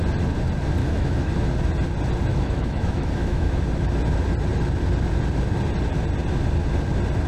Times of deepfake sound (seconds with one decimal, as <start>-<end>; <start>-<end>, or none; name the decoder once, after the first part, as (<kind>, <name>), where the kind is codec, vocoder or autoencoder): 0.8-1.3 (autoencoder, DAC-VAE); 2.3-3.6